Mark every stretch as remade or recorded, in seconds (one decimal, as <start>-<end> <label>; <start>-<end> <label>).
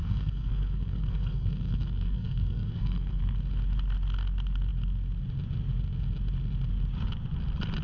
0.0-3.2 remade; 3.2-7.8 recorded